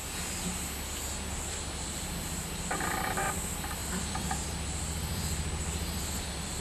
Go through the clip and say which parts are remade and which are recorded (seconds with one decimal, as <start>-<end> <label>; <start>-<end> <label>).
0.0-3.8 recorded; 3.8-6.6 remade